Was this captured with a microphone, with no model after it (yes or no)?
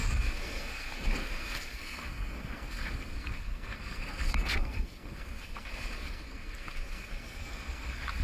no